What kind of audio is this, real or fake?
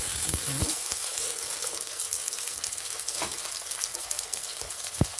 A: fake